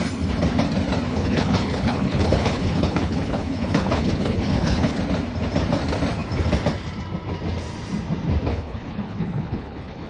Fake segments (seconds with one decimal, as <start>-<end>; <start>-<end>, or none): 1.1-5.0; 8.5-10.1